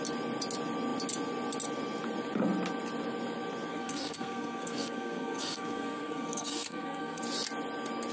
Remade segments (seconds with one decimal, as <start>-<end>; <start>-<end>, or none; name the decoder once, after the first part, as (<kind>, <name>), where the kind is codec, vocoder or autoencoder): 3.7-7.2 (codec, SNAC)